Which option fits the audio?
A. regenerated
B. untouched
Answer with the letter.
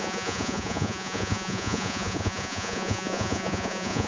A